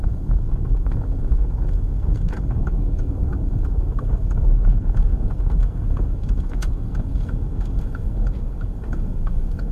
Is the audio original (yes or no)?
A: no